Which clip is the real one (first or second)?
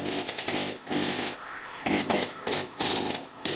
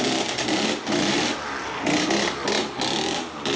second